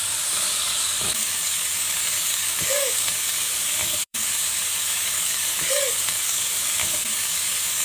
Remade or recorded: remade